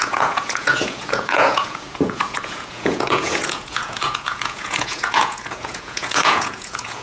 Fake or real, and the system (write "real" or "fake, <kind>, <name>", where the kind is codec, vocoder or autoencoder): fake, vocoder, Vocos